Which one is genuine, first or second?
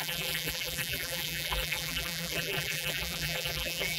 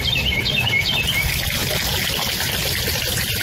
second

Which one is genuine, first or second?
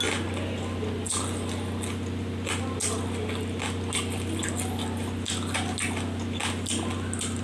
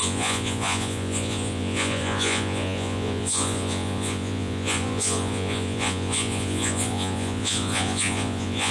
first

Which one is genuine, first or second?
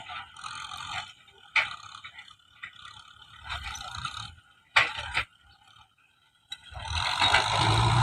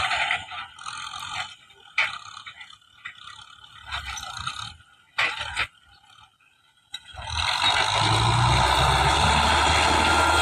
second